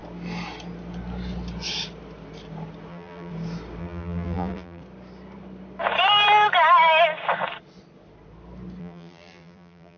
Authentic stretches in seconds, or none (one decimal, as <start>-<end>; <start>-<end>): 0.0-2.9; 3.3-3.8; 4.8-8.8